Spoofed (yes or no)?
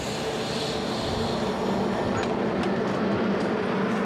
no